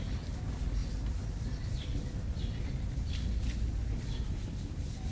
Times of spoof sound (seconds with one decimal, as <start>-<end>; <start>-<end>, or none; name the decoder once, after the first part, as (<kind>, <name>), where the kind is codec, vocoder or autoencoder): none